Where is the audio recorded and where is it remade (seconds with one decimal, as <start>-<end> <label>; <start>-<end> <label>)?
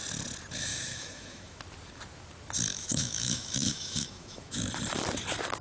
0.0-0.7 recorded; 0.7-1.6 remade; 1.6-2.7 recorded; 2.7-4.7 remade; 4.7-5.6 recorded